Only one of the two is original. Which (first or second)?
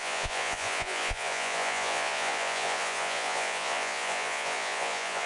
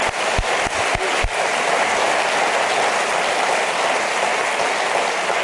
second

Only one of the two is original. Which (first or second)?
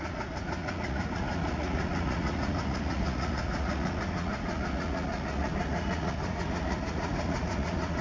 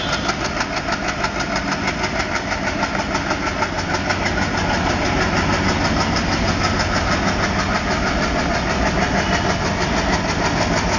second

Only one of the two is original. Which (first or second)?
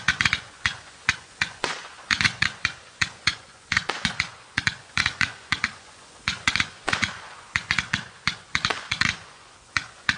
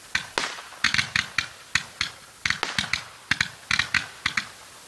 second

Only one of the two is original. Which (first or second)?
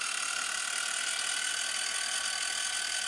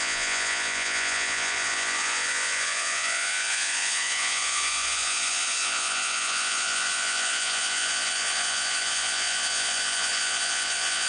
first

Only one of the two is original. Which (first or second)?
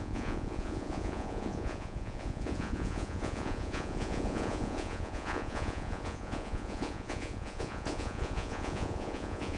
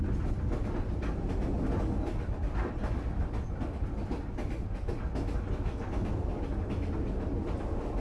second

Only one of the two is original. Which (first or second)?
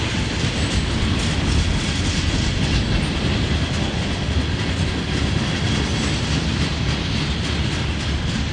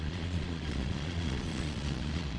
first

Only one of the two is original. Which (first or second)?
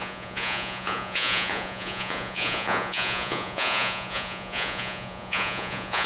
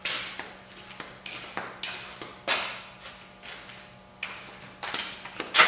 second